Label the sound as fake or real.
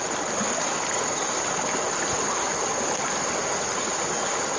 real